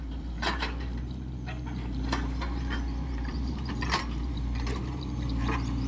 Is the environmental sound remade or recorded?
remade